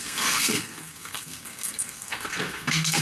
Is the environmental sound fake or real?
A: fake